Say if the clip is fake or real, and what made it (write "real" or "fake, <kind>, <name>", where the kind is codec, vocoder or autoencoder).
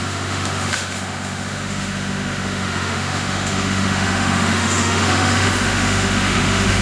fake, autoencoder, DAC-VAE